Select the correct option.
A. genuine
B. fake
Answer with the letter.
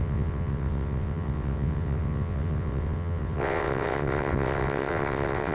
B